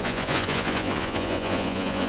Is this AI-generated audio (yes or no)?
yes